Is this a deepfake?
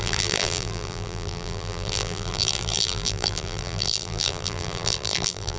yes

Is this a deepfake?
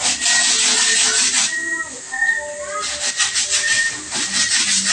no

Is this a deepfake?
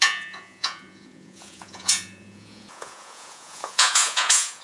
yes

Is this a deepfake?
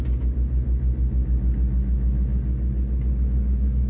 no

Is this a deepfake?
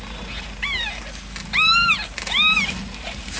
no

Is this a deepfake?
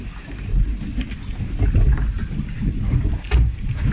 no